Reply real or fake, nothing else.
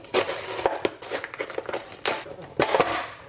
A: real